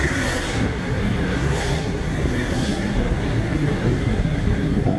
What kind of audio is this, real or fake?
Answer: fake